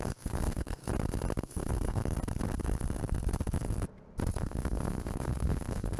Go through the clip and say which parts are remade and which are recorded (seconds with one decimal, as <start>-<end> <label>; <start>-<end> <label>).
0.0-0.8 remade; 0.8-1.4 recorded; 1.4-2.0 remade; 2.0-4.4 recorded; 4.4-6.0 remade